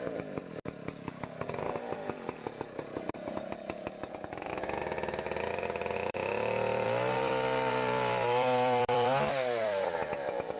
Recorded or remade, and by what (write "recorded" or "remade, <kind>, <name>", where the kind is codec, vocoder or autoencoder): remade, vocoder, BigVGAN v2